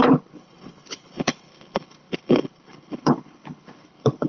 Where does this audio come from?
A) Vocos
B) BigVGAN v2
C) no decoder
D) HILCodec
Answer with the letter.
D